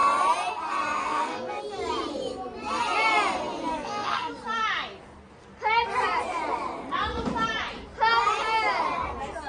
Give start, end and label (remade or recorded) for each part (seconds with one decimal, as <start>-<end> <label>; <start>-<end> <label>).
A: 0.0-1.0 recorded; 1.0-1.6 remade; 1.6-3.7 recorded; 3.7-4.3 remade; 4.3-9.5 recorded